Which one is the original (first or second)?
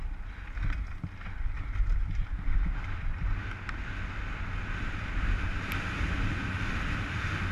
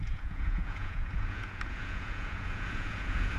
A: first